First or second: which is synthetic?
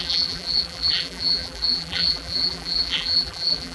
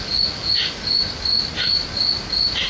first